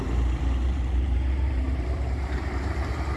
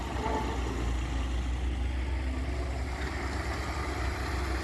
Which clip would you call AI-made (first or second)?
first